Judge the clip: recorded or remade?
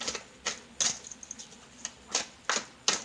recorded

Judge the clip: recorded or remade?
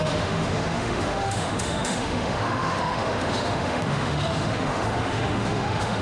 remade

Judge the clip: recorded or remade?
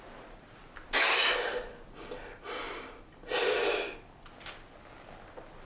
recorded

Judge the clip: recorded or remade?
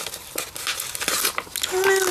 recorded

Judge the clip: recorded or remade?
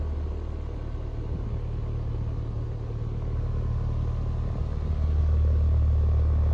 recorded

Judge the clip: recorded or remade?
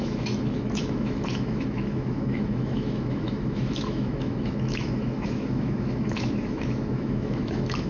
remade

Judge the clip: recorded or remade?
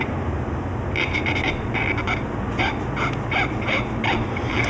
recorded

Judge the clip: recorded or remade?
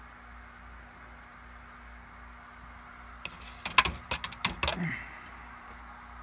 recorded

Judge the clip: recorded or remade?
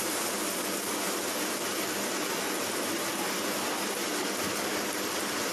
recorded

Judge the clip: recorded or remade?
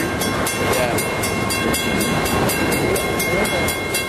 recorded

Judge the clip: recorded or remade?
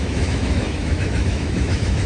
remade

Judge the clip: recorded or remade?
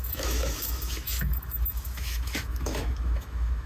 remade